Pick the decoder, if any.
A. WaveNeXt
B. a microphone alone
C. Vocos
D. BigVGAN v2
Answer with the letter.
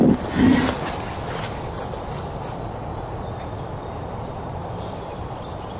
B